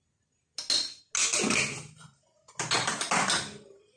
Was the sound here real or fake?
real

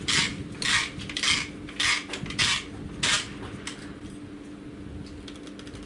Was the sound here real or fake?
real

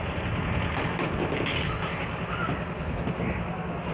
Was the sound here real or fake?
real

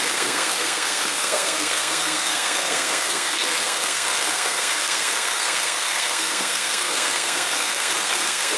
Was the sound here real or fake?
fake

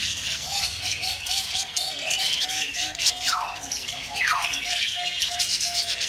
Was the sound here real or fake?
fake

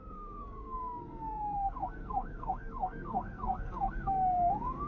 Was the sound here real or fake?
fake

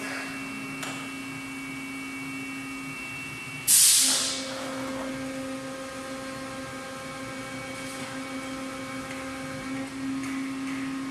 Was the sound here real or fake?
real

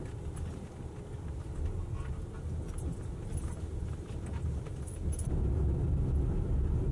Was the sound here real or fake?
real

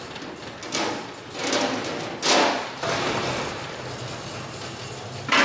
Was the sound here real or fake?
real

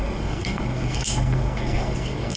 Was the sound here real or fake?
fake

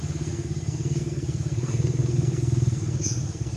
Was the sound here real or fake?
fake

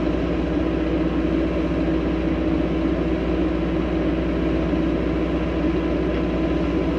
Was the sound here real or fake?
real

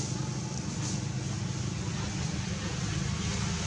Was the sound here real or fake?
real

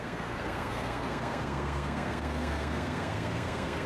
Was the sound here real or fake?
fake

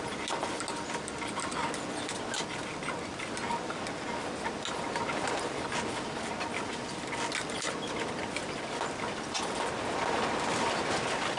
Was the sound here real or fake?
real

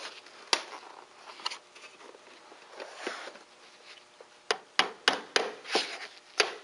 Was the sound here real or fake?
real